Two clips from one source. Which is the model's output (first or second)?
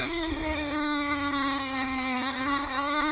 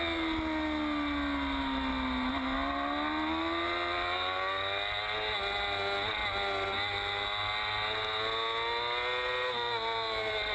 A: first